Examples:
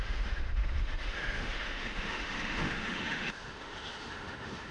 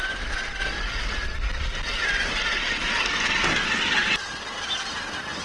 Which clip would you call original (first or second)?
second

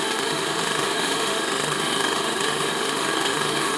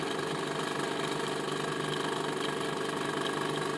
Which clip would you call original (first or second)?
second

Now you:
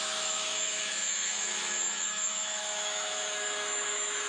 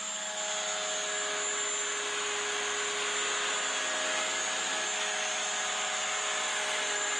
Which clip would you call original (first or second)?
second